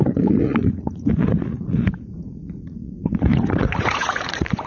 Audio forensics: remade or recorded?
remade